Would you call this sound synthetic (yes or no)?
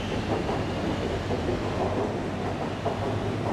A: no